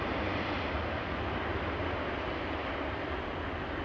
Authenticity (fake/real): real